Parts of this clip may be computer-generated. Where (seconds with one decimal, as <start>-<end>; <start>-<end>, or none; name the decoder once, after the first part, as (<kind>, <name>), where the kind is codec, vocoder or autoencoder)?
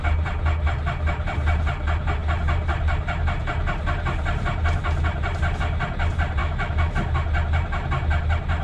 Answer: 6.4-6.9 (autoencoder, DAC-VAE)